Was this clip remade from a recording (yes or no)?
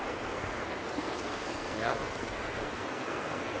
yes